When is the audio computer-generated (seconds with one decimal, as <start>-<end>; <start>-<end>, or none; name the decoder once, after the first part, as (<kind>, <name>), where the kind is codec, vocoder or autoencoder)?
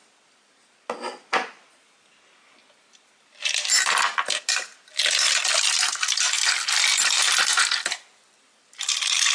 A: none